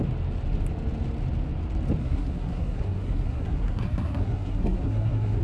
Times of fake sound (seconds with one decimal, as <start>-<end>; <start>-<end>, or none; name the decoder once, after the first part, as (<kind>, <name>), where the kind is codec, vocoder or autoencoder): 2.0-5.4 (codec, SNAC)

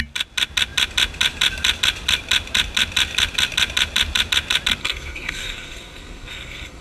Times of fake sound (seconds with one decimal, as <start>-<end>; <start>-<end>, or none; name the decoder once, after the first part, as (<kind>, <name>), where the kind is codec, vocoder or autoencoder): 4.8-6.8 (codec, SNAC)